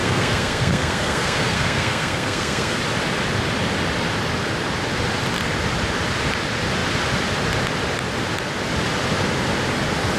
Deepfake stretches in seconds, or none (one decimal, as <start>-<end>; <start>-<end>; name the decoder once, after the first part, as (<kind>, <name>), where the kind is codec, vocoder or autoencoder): 0.0-2.8 (codec, SNAC)